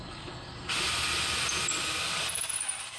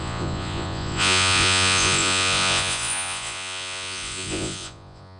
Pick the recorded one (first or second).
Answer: first